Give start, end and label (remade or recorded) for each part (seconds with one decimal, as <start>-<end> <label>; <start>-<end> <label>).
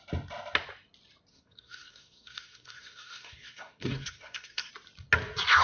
0.0-1.3 recorded; 1.3-4.7 remade; 4.7-5.6 recorded